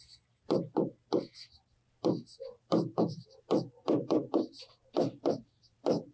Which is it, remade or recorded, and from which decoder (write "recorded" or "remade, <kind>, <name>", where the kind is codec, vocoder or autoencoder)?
remade, vocoder, BigVGAN v2